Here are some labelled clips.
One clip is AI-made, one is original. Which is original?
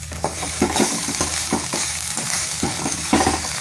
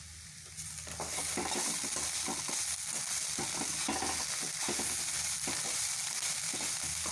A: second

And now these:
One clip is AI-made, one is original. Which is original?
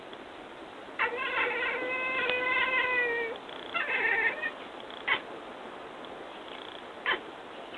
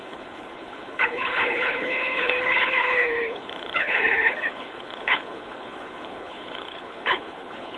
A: first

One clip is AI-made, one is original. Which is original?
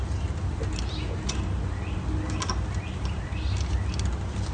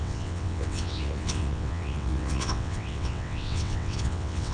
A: first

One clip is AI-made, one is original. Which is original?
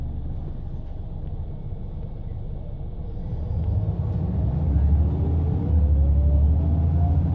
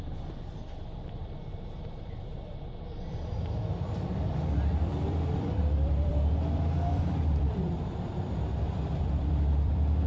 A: first